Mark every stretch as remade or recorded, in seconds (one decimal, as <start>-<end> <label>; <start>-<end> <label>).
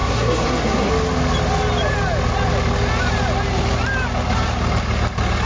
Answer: 0.0-0.9 remade; 0.9-5.5 recorded